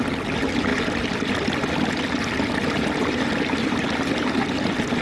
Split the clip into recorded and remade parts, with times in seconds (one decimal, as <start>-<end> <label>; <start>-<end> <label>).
0.0-5.0 recorded